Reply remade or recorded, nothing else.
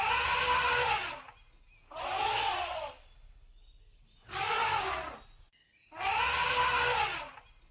recorded